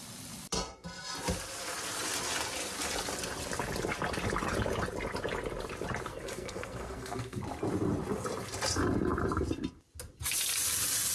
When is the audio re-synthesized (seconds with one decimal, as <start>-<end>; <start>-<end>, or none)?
6.1-7.4